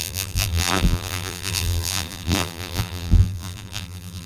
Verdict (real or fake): fake